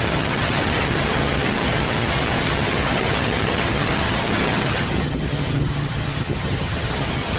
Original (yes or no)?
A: no